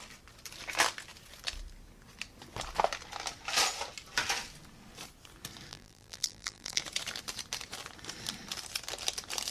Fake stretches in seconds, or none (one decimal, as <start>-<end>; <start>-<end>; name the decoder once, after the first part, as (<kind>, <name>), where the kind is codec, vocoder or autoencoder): 5.7-6.8 (vocoder, BigVGAN v2)